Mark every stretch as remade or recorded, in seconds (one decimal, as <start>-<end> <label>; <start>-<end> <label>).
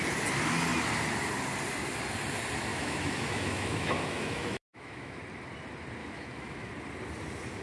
0.0-2.7 recorded; 2.7-5.2 remade; 5.2-6.0 recorded; 6.0-6.7 remade; 6.7-7.6 recorded